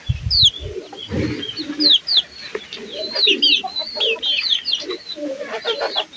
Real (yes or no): yes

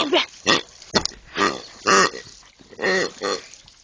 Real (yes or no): yes